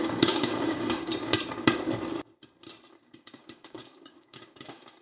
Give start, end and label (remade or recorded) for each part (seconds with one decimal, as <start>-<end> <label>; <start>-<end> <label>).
0.0-1.1 remade; 1.1-2.9 recorded; 2.9-5.0 remade